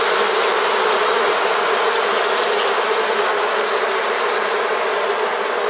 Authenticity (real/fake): real